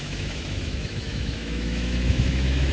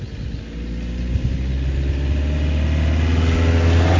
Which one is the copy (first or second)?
first